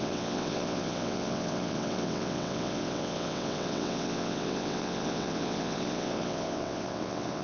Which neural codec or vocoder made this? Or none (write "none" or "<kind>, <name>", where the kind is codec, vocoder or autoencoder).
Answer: vocoder, WaveNeXt